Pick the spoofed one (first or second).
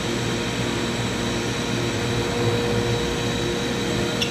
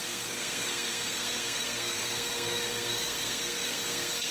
second